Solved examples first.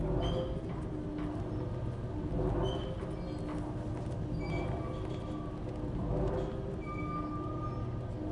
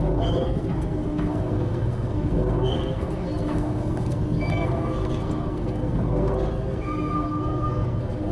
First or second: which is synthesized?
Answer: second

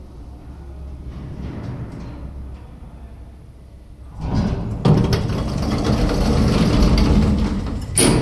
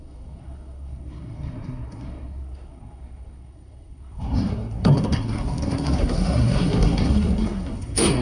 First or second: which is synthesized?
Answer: second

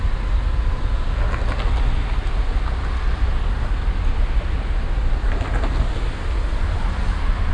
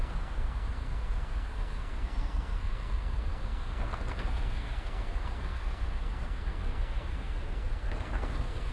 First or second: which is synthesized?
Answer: second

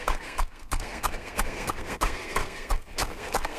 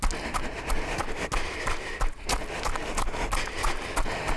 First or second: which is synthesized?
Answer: first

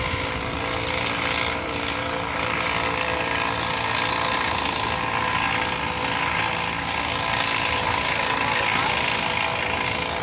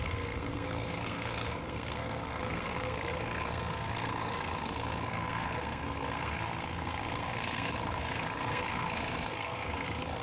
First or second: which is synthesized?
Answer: second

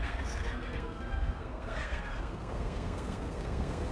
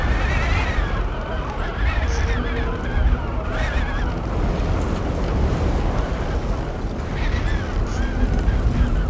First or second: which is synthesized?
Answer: first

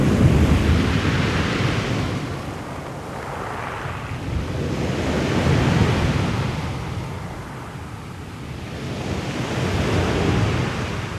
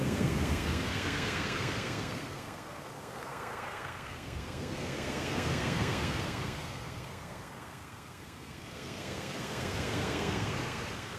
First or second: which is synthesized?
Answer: second